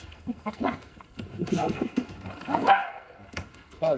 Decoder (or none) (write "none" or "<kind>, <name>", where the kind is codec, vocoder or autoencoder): codec, SNAC